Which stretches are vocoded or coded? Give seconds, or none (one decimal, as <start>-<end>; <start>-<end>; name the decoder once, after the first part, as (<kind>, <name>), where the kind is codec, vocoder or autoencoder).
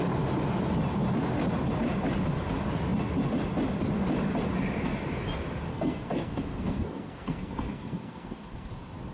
5.7-8.7 (codec, SNAC)